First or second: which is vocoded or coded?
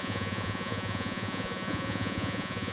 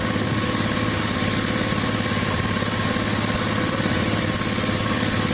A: first